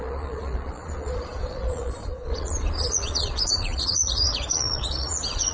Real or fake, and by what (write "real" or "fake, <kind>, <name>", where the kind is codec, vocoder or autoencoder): fake, vocoder, Vocos